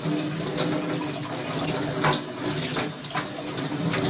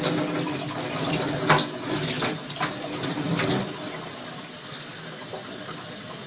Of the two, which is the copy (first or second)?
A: second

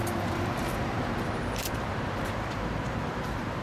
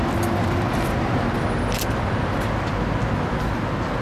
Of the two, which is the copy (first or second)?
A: first